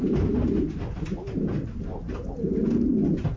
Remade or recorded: recorded